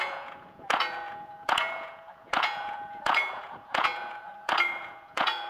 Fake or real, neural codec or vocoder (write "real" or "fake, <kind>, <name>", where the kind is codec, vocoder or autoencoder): fake, vocoder, Vocos